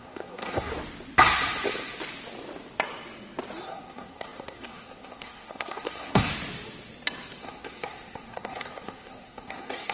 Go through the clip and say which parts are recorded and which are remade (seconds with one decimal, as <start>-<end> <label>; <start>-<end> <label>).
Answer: 0.0-0.7 remade; 0.7-3.6 recorded; 3.6-6.3 remade; 6.3-7.4 recorded; 7.4-9.9 remade